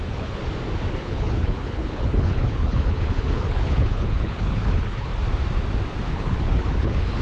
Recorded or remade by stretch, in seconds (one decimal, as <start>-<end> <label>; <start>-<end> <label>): 0.0-0.4 remade; 0.4-0.9 recorded; 0.9-5.1 remade; 5.1-6.1 recorded; 6.1-7.2 remade